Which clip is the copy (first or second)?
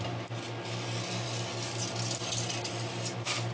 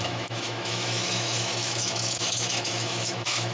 second